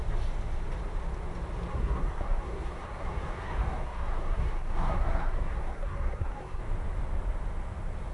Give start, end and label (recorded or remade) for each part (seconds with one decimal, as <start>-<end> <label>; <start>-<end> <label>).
0.0-1.7 recorded; 1.7-6.6 remade; 6.6-8.1 recorded